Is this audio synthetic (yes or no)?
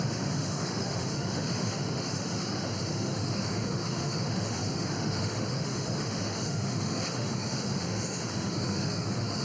yes